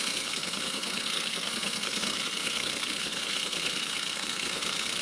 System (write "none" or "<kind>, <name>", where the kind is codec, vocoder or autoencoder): codec, SNAC